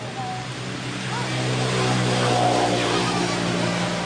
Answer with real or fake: real